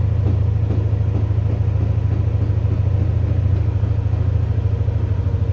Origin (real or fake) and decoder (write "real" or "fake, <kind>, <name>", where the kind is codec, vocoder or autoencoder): real